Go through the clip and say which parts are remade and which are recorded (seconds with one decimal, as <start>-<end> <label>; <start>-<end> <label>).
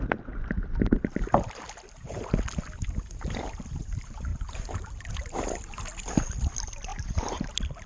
0.0-4.3 recorded; 4.3-5.1 remade; 5.1-6.9 recorded; 6.9-7.5 remade; 7.5-7.9 recorded